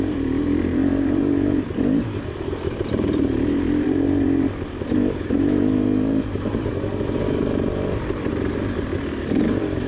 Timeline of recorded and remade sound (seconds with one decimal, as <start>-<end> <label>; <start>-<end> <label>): 0.0-9.9 remade